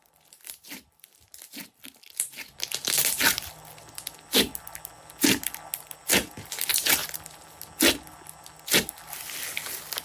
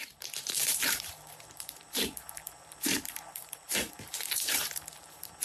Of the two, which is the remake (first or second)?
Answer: second